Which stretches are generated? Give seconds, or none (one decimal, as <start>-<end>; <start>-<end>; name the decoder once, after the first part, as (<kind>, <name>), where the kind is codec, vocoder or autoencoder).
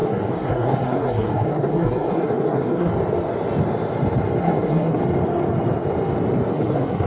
0.0-2.9 (codec, SNAC); 4.4-5.0; 6.5-7.1